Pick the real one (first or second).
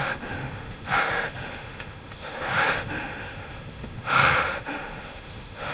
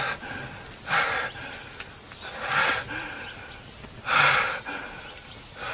second